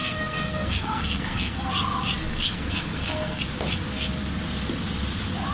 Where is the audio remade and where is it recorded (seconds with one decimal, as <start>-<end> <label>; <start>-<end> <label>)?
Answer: 0.0-1.7 remade; 1.7-2.3 recorded; 2.3-3.4 remade; 3.4-5.5 recorded